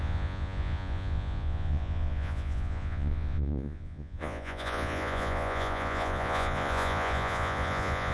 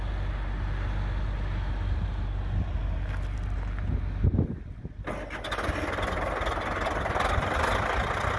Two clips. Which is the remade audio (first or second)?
first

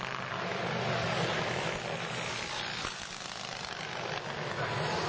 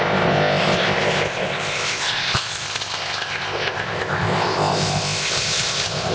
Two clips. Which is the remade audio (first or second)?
second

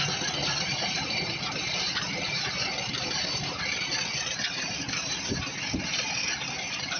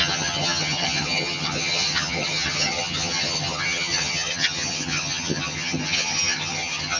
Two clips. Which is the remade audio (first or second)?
second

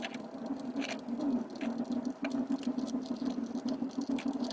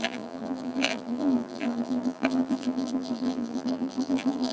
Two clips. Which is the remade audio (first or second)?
second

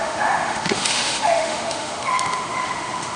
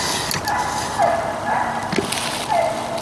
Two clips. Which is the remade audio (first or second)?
first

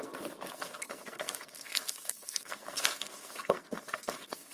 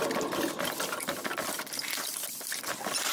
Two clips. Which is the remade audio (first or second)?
first